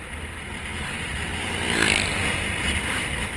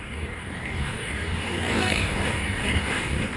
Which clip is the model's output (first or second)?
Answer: second